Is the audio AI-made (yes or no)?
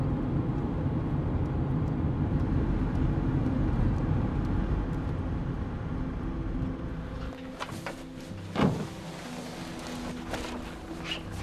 no